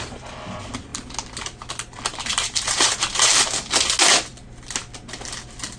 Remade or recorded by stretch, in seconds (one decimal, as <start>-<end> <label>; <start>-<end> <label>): 0.0-2.1 recorded; 2.1-3.3 remade; 3.3-5.8 recorded